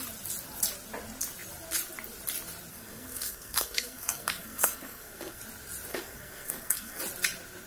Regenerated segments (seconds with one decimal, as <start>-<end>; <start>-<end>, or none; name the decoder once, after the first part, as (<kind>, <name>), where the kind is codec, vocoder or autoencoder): 2.7-5.4 (codec, SNAC); 5.9-7.0